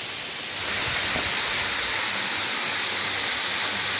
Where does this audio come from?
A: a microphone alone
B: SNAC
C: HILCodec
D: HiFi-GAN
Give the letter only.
A